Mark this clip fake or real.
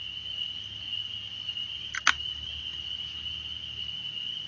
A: real